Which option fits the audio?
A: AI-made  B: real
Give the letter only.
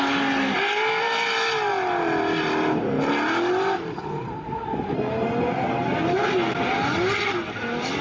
B